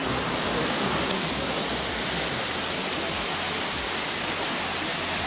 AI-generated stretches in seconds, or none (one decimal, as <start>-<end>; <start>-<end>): none